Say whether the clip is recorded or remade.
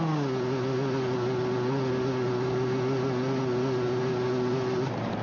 recorded